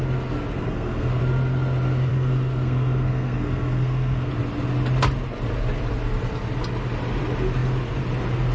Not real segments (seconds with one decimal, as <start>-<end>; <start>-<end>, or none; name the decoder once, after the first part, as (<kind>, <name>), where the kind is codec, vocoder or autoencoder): 0.6-1.2 (codec, SNAC); 2.1-4.3